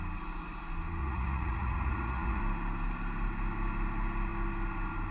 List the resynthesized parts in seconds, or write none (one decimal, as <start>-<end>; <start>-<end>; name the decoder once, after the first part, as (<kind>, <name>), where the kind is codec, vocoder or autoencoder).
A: 1.0-2.4 (vocoder, Vocos)